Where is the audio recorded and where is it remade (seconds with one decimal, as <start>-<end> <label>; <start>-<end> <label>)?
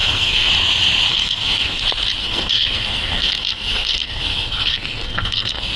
0.0-0.5 remade; 0.5-1.1 recorded; 1.1-1.8 remade; 1.8-2.2 recorded; 2.2-5.8 remade